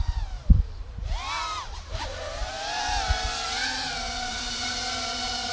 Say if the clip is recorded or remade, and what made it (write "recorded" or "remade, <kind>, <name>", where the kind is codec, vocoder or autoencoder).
remade, vocoder, BigVGAN v2